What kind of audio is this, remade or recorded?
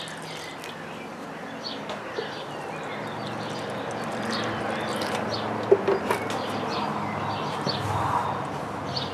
recorded